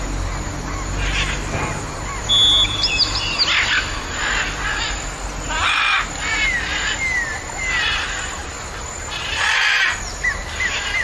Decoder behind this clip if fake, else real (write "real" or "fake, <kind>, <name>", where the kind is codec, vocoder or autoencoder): real